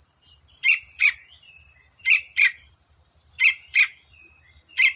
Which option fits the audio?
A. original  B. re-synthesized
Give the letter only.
B